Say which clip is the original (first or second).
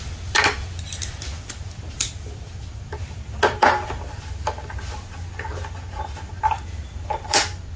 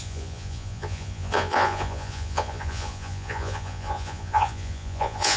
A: first